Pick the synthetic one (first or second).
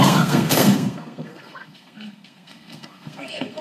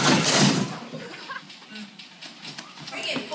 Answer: first